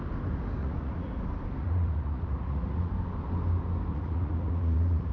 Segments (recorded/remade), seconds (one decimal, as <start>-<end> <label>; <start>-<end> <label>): 0.0-0.6 recorded; 0.6-1.1 remade; 1.1-1.6 recorded; 1.6-2.9 remade; 2.9-3.9 recorded; 3.9-5.1 remade